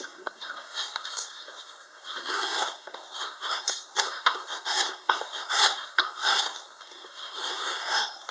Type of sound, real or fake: fake